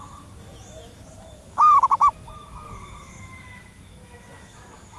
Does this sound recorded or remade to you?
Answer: remade